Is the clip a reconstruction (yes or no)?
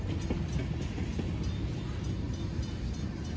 no